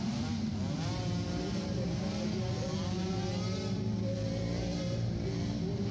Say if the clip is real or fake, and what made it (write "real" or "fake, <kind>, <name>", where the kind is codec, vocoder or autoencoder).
real